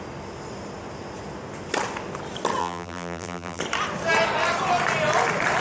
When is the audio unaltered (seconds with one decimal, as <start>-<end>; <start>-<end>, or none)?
0.0-2.6; 3.6-5.6

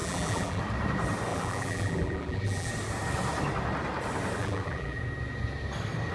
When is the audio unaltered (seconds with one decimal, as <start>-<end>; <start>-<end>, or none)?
0.6-1.3; 2.7-4.4; 5.0-6.1

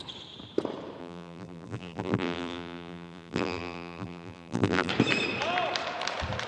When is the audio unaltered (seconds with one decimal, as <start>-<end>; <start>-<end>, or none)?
0.0-1.0; 4.9-6.5

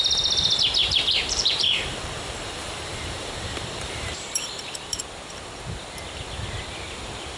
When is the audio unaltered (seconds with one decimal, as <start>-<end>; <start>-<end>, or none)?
0.0-0.8; 5.0-7.4